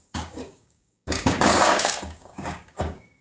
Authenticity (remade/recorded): remade